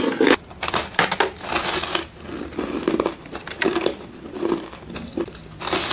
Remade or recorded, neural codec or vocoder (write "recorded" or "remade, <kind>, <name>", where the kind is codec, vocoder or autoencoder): recorded